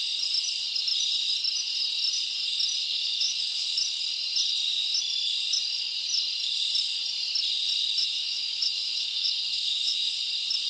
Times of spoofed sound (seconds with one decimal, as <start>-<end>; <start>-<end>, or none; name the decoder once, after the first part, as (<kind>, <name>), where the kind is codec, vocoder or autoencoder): 2.8-3.7 (autoencoder, DAC-VAE); 8.0-10.1